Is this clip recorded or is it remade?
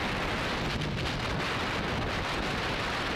recorded